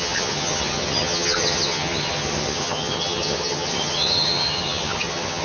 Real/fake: fake